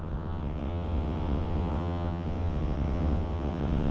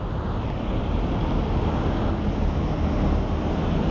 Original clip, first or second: second